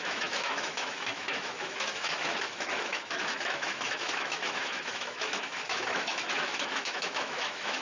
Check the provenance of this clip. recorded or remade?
remade